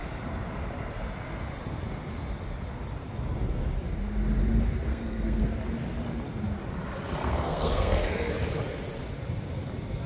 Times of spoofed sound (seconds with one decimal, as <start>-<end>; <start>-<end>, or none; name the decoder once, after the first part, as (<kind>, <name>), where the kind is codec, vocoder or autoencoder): 4.9-5.4 (codec, SNAC); 7.2-8.3